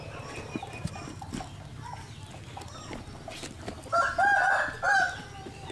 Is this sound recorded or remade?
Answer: recorded